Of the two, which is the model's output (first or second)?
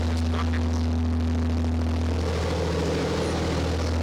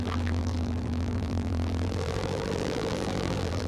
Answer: second